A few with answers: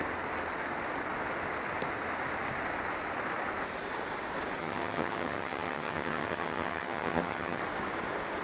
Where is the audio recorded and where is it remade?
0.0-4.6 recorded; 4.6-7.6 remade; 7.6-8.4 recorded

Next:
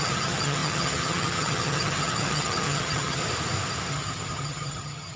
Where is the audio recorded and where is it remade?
0.0-3.2 remade; 3.2-3.9 recorded; 3.9-5.2 remade

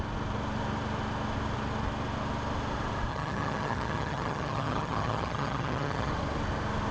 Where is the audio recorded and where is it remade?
0.0-3.1 recorded; 3.1-6.1 remade; 6.1-6.9 recorded